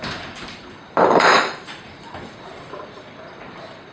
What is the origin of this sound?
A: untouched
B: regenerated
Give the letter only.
B